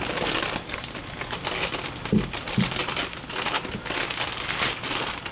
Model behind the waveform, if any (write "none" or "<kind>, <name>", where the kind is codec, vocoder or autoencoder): none